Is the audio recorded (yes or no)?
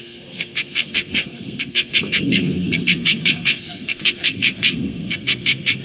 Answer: no